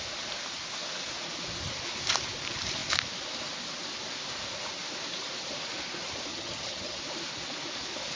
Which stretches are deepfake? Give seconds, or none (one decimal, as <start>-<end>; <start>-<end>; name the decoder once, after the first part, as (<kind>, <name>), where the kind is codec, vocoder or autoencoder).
6.3-7.0 (vocoder, HiFi-GAN)